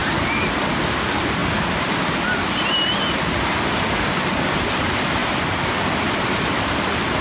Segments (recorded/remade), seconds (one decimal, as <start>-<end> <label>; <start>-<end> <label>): 0.0-7.2 recorded